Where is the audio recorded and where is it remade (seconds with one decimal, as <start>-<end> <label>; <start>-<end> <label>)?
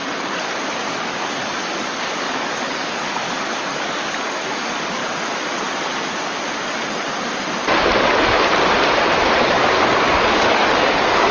0.0-0.7 recorded; 0.7-5.0 remade; 5.0-9.5 recorded; 9.5-11.3 remade